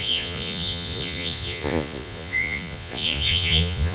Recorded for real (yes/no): no